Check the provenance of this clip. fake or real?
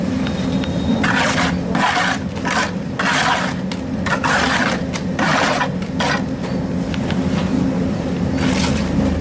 real